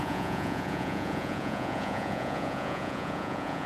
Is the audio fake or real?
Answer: fake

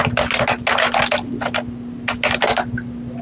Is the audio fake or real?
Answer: real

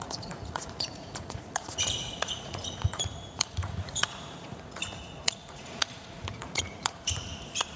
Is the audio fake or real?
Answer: fake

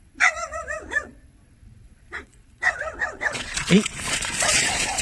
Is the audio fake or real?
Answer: fake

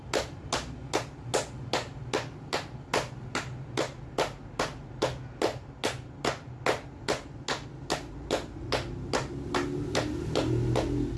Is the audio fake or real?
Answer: real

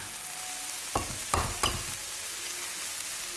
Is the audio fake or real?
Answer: real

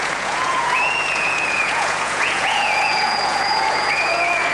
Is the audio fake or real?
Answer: fake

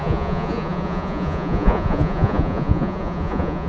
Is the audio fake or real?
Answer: fake